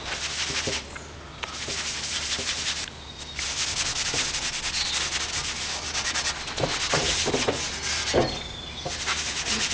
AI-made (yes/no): no